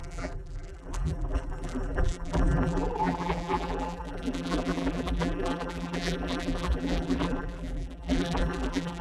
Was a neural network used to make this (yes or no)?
yes